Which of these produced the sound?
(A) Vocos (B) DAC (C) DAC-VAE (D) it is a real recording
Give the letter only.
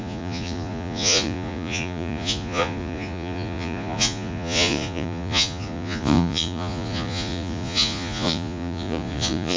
A